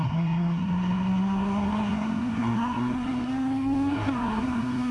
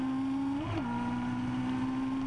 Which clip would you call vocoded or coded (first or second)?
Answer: first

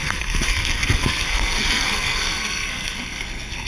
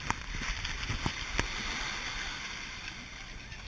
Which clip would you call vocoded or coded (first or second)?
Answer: first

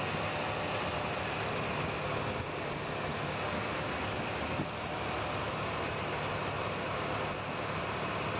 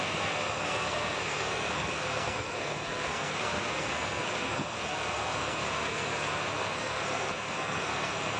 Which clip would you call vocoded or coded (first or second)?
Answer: second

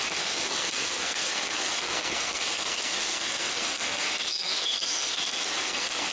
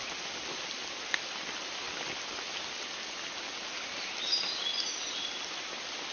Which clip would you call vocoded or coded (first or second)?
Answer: first